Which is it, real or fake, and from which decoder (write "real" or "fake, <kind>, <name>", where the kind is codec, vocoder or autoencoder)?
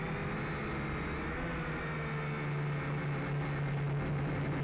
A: real